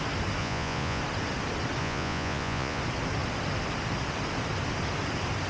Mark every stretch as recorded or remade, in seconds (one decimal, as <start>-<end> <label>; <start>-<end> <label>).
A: 0.0-0.4 recorded; 0.4-1.0 remade; 1.0-1.8 recorded; 1.8-2.8 remade; 2.8-5.5 recorded